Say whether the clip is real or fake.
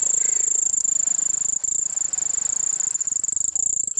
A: real